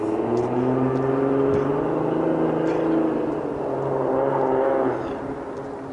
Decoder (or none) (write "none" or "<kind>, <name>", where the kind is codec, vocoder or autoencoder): none